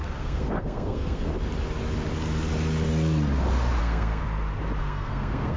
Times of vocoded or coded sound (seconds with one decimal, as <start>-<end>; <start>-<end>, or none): 0.0-1.3; 3.8-4.2; 4.8-5.6